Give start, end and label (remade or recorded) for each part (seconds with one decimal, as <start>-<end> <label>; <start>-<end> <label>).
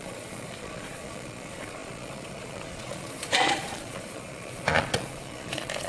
0.0-5.9 remade